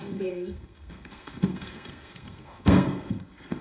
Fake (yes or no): yes